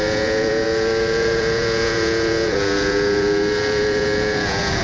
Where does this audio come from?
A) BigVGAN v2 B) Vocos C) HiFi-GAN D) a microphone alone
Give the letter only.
B